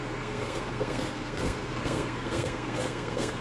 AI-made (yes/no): yes